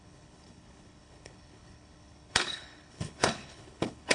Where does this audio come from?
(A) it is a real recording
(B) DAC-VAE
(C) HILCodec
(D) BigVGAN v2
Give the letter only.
C